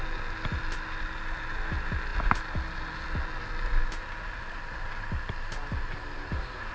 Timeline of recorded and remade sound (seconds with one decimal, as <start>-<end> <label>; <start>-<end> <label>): 0.0-6.7 recorded